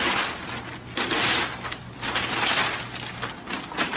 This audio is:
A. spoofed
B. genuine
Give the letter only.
B